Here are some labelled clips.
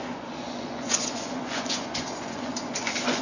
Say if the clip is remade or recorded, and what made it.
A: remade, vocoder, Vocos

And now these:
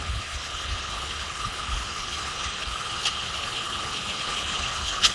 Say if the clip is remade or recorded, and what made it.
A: remade, codec, HILCodec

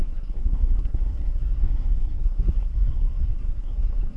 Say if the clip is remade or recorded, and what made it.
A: remade, codec, SNAC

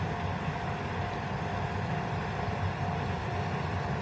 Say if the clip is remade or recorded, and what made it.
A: recorded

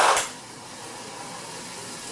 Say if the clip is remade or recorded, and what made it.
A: recorded